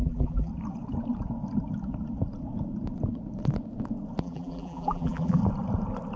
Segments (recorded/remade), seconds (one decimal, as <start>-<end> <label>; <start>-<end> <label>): 0.0-0.5 remade; 0.5-4.2 recorded; 4.2-5.4 remade; 5.4-6.2 recorded